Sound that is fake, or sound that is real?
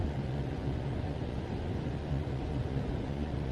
fake